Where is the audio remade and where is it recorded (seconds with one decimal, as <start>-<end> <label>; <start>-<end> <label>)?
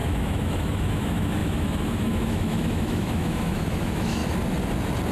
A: 0.0-4.2 remade; 4.2-5.1 recorded